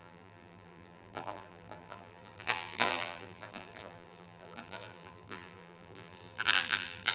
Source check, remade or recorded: remade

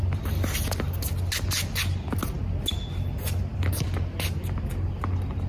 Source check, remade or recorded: recorded